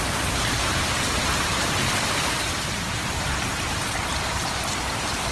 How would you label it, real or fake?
fake